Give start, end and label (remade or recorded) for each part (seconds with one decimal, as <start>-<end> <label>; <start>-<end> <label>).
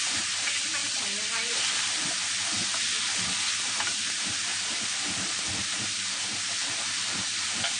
0.0-0.8 remade; 0.8-3.7 recorded; 3.7-7.8 remade